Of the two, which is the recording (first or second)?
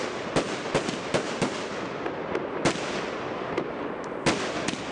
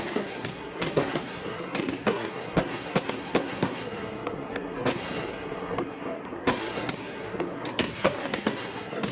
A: first